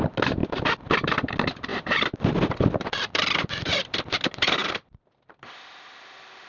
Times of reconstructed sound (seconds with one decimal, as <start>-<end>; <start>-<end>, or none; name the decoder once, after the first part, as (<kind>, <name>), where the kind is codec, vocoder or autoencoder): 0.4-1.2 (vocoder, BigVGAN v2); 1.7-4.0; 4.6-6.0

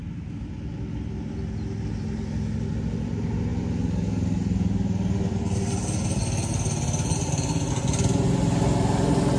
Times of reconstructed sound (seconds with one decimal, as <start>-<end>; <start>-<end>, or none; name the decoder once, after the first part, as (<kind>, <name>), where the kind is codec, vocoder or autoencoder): none

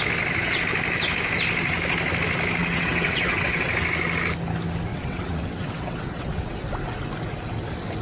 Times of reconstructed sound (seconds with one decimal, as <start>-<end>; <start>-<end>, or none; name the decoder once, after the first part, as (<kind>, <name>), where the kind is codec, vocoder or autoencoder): 2.6-3.7 (vocoder, WaveNeXt); 4.9-6.5

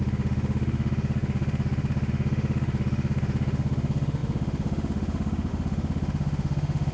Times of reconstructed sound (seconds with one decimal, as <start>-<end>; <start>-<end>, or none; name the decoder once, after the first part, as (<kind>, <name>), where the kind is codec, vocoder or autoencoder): 0.0-6.9 (autoencoder, DAC-VAE)

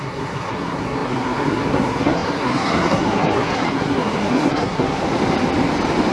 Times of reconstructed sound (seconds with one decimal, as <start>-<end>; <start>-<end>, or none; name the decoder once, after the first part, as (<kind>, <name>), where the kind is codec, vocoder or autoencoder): 0.0-5.0 (codec, SNAC)

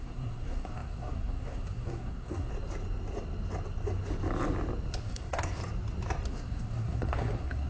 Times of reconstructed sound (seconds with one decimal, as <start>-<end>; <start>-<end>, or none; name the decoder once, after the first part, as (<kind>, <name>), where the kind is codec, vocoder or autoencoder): 0.0-2.5 (codec, SNAC); 5.0-5.6; 6.3-7.7